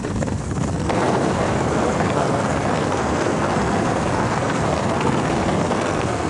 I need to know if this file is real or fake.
fake